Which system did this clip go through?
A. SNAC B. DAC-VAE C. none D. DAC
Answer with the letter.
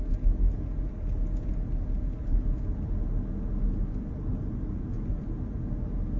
C